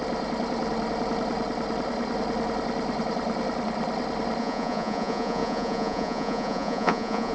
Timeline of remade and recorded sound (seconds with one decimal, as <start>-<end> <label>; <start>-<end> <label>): 0.0-4.4 recorded; 4.4-7.3 remade